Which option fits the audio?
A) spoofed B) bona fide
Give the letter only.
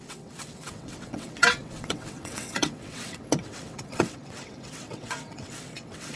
A